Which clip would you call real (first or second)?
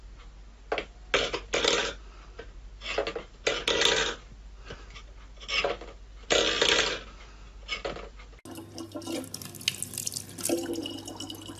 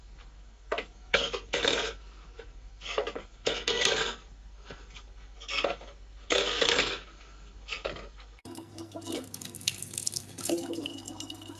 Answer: first